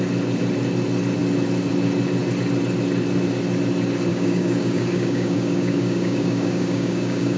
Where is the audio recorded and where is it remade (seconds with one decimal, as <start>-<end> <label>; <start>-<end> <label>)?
0.0-4.1 recorded; 4.1-7.4 remade